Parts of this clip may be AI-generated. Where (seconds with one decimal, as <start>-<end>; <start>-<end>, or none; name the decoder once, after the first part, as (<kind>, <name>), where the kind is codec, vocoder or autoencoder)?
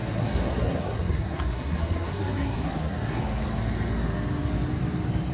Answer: 0.0-3.2 (codec, SNAC)